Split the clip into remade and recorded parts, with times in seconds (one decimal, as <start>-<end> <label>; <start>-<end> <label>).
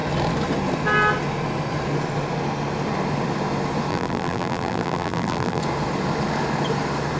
0.0-3.9 recorded; 3.9-5.6 remade; 5.6-7.2 recorded